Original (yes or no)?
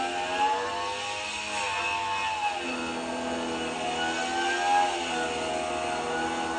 yes